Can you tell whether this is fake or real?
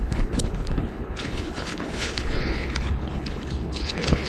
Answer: fake